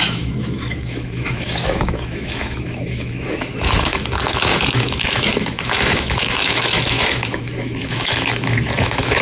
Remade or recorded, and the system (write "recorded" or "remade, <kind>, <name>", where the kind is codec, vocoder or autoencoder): remade, autoencoder, DAC-VAE